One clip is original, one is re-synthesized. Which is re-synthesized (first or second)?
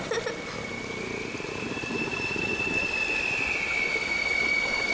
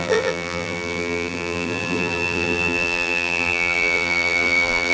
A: second